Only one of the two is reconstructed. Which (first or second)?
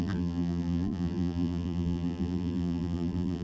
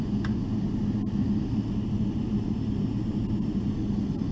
first